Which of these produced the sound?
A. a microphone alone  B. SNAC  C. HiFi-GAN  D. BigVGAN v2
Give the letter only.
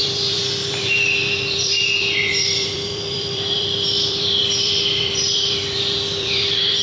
D